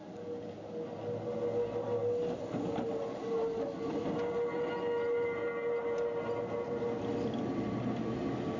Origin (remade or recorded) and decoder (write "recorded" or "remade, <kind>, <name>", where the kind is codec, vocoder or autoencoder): recorded